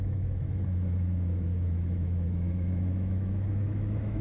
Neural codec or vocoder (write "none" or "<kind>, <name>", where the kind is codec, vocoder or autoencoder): autoencoder, DAC-VAE